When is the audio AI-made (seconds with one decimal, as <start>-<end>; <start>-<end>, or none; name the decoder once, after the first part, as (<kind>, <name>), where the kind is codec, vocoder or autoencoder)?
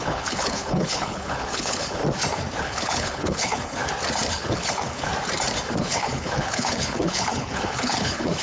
0.0-2.0 (codec, HILCodec); 2.6-3.8; 4.3-5.1; 5.8-8.4